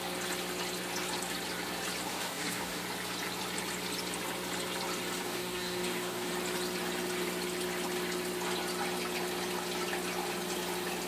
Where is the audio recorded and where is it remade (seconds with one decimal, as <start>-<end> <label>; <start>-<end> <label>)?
0.0-2.1 recorded; 2.1-2.8 remade; 2.8-5.2 recorded; 5.2-6.3 remade; 6.3-11.1 recorded